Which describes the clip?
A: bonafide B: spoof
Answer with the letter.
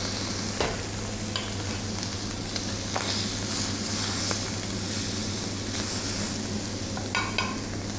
A